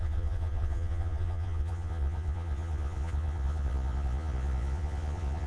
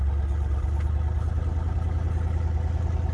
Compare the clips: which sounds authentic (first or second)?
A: second